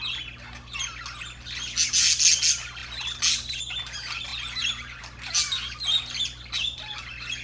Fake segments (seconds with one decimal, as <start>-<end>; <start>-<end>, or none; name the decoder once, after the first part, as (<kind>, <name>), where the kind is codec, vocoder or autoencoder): none